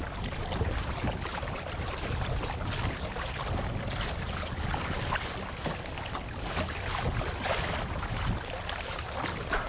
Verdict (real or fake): real